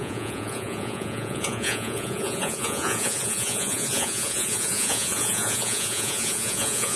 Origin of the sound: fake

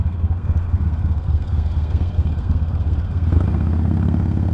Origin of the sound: fake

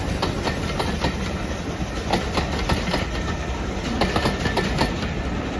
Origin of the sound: real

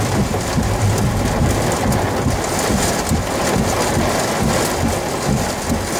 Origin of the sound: real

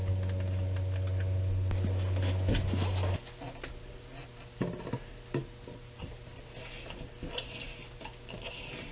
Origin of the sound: real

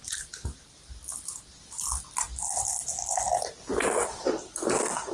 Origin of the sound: real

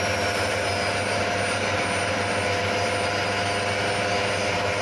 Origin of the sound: real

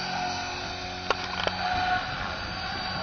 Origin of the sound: real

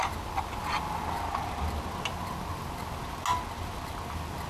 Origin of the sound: real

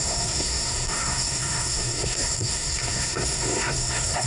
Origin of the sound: fake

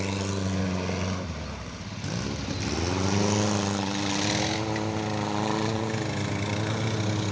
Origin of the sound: real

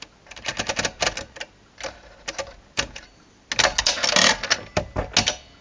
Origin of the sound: real